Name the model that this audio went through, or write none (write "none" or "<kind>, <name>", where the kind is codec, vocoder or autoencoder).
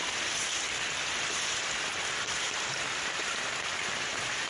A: none